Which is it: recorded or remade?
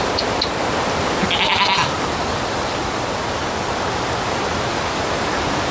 recorded